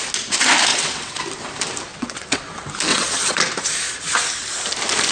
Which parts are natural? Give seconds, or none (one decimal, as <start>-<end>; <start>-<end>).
0.0-0.7; 1.2-1.9; 2.4-2.9; 3.4-5.1